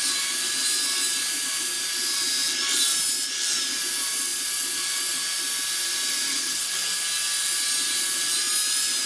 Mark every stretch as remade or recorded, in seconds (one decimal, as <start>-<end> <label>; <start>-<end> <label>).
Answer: 0.0-6.3 recorded; 6.3-6.8 remade; 6.8-9.1 recorded